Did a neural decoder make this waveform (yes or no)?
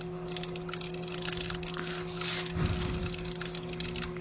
no